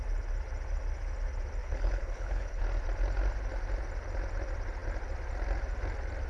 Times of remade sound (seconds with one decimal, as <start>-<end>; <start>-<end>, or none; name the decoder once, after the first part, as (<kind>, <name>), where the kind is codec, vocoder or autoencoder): 1.6-2.6 (codec, HILCodec)